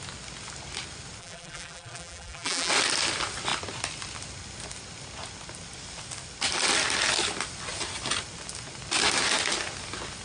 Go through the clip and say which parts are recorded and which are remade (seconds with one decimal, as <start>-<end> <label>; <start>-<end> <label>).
0.0-1.2 recorded; 1.2-2.7 remade; 2.7-10.2 recorded